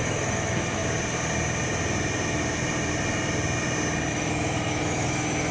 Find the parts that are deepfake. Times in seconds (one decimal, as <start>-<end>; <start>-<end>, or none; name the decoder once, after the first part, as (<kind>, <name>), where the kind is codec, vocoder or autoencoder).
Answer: 0.0-0.8 (autoencoder, DAC-VAE); 4.1-5.5